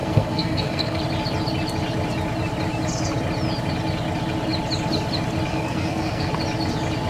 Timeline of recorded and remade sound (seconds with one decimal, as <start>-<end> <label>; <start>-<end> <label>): 0.0-1.0 remade; 1.0-5.5 recorded; 5.5-6.3 remade; 6.3-7.1 recorded